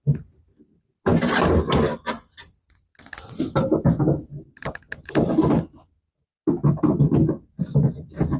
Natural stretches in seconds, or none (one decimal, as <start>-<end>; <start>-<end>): 0.0-8.4